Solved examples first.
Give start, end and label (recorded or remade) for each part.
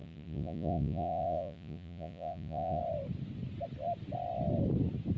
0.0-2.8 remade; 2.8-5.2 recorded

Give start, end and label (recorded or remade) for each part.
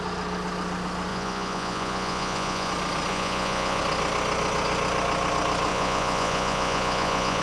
0.0-1.1 recorded; 1.1-2.7 remade; 2.7-3.1 recorded; 3.1-3.8 remade; 3.8-5.7 recorded; 5.7-7.4 remade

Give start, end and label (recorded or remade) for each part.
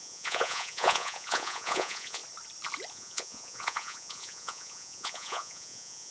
0.0-2.2 remade; 2.2-2.9 recorded; 2.9-6.1 remade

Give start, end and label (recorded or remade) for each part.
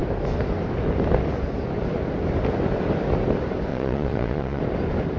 0.0-3.7 recorded; 3.7-4.6 remade; 4.6-5.2 recorded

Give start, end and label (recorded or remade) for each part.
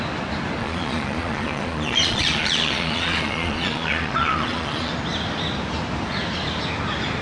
0.0-0.6 recorded; 0.6-4.9 remade; 4.9-7.2 recorded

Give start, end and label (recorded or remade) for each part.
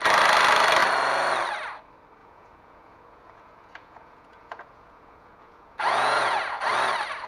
0.0-2.2 recorded; 2.2-6.6 remade; 6.6-7.3 recorded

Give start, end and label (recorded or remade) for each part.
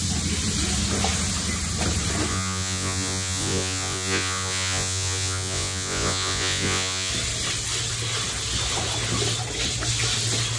0.0-2.3 recorded; 2.3-7.1 remade; 7.1-10.6 recorded